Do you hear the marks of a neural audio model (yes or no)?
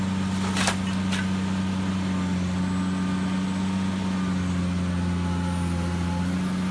no